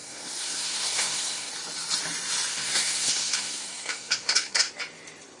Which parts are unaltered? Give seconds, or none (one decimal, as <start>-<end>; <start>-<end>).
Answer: 1.5-2.5; 4.7-5.4